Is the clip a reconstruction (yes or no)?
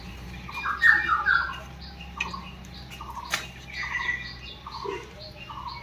no